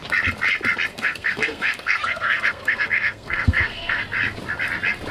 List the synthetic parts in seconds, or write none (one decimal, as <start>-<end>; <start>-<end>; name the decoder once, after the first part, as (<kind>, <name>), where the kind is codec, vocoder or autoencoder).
0.9-4.0 (codec, SNAC)